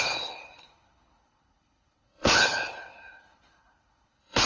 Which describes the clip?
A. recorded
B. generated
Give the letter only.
B